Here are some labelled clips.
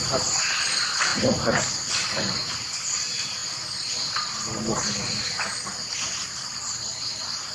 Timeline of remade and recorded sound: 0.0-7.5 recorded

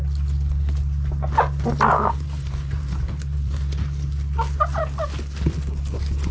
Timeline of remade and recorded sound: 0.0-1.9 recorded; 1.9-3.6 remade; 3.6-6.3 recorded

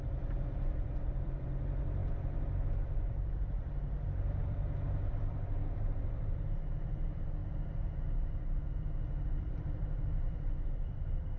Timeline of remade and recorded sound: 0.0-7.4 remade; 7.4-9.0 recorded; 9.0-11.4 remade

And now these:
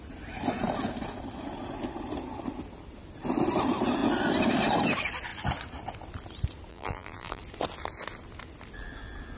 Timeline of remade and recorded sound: 0.0-6.7 recorded; 6.7-7.4 remade; 7.4-9.4 recorded

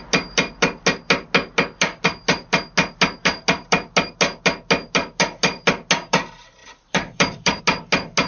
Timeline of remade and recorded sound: 0.0-6.6 recorded; 6.6-7.6 remade; 7.6-8.3 recorded

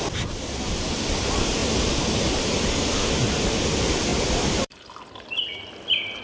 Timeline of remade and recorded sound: 0.0-4.1 recorded; 4.1-5.3 remade; 5.3-6.2 recorded

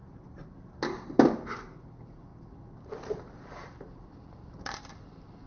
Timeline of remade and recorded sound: 0.0-0.6 remade; 0.6-2.3 recorded; 2.3-4.8 remade; 4.8-5.5 recorded